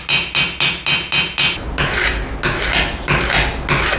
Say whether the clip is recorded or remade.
recorded